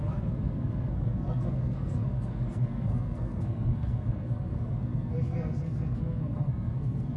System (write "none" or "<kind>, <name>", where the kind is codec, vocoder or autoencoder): codec, SNAC